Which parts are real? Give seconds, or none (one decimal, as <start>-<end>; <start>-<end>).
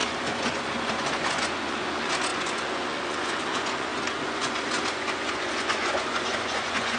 none